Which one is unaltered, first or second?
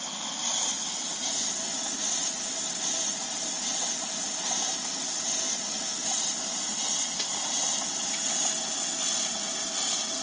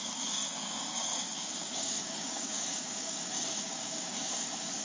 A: first